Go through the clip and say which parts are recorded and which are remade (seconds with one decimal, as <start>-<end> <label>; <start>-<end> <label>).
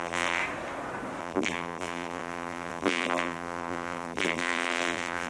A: 0.0-0.4 remade; 0.4-1.2 recorded; 1.2-5.3 remade